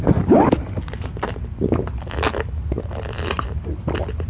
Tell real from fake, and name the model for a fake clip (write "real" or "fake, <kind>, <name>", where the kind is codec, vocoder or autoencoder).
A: real